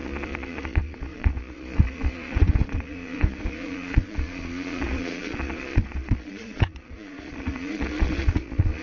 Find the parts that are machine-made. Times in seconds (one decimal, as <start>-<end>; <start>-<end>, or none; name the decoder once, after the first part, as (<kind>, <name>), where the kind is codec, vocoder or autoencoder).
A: 0.0-8.8 (vocoder, Vocos)